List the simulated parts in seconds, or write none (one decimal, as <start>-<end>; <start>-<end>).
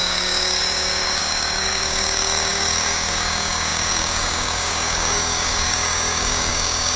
0.0-7.0